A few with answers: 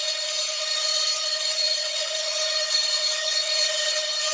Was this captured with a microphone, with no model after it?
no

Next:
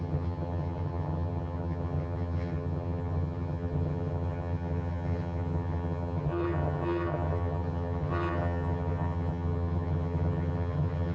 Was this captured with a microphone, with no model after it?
no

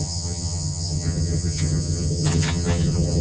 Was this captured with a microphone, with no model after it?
no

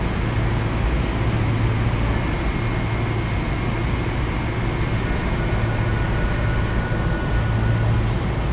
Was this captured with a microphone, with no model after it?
yes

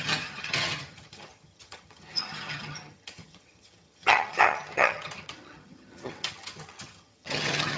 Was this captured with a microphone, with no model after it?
no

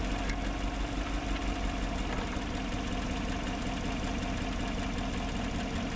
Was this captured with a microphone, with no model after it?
yes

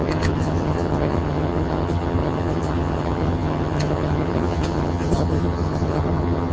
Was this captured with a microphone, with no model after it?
no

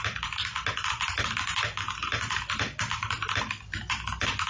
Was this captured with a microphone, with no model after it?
yes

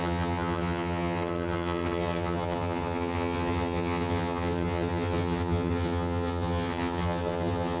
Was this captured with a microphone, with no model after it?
no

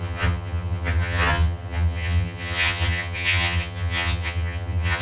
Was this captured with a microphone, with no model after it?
no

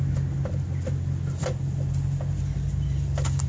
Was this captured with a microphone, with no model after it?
yes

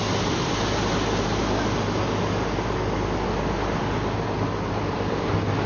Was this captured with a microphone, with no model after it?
yes